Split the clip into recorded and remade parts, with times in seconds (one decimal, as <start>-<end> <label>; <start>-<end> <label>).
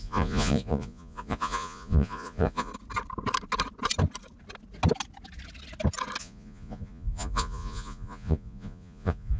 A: 0.0-2.7 remade; 2.7-6.2 recorded; 6.2-9.4 remade